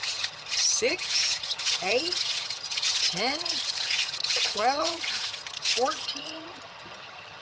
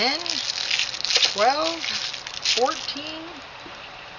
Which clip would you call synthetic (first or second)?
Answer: first